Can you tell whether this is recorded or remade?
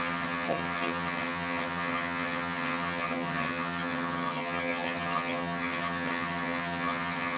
remade